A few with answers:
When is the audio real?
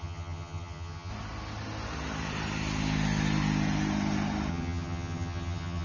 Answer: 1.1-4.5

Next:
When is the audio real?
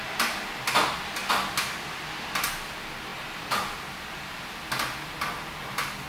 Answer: 0.0-6.1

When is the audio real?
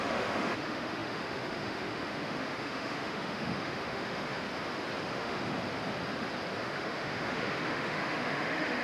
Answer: 4.5-5.0; 5.6-6.6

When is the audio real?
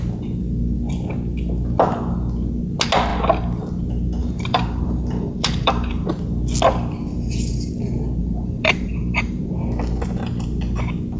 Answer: 0.0-4.2; 6.1-7.1; 7.7-8.2; 9.4-11.2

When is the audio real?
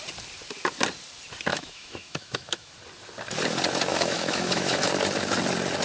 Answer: 0.0-1.5; 2.7-3.9; 4.9-5.8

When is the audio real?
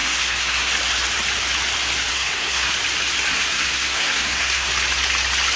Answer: 0.7-2.1; 2.7-3.3; 4.7-5.6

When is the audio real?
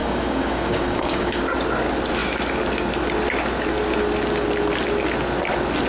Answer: 1.4-5.9